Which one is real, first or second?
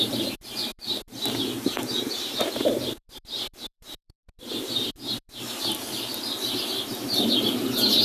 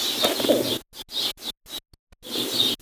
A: second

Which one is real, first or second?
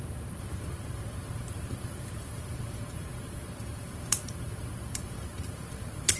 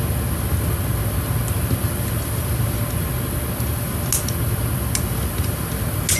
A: second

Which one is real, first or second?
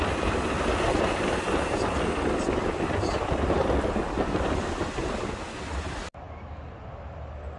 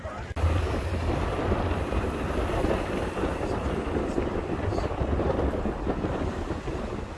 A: first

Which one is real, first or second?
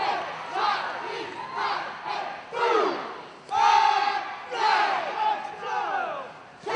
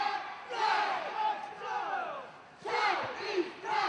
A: first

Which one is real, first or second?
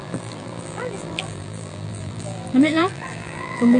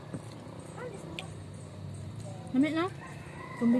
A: second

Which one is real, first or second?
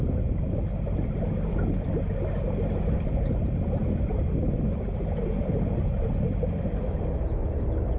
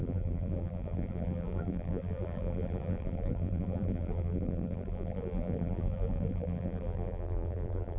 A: first